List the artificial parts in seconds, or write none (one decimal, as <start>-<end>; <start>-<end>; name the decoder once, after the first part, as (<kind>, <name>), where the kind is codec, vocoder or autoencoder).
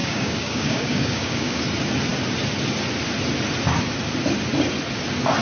0.0-1.6 (codec, DAC)